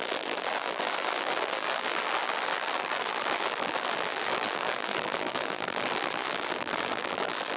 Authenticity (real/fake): fake